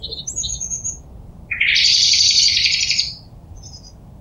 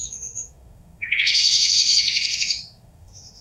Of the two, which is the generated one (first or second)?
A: second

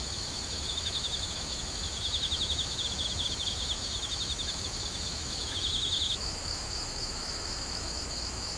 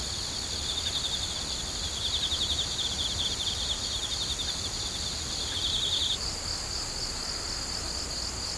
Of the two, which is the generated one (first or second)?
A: first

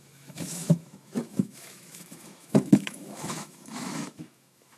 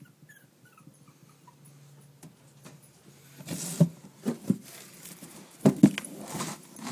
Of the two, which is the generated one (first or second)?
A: first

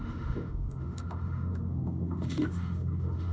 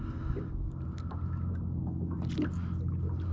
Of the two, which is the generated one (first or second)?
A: first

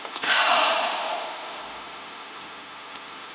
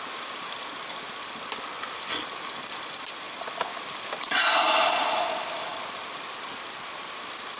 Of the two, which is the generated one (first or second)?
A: first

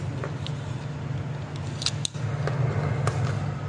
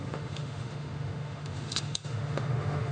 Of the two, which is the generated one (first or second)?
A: second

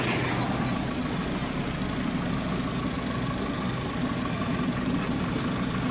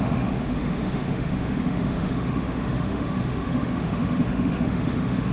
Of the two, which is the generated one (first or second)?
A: second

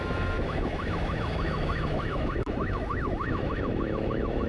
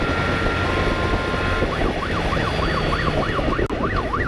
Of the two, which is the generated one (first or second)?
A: first